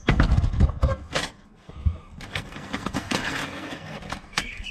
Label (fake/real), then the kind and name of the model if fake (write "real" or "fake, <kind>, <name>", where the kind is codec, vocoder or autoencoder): fake, codec, SNAC